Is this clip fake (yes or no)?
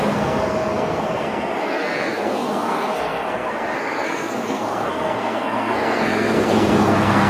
yes